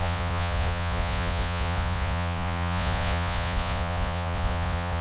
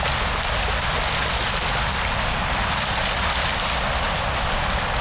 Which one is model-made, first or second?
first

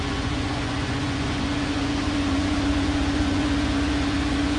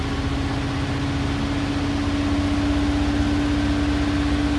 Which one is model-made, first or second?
first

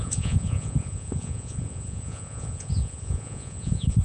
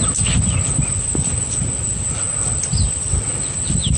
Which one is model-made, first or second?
first